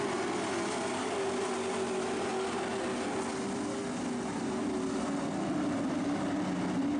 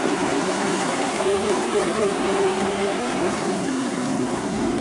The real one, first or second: first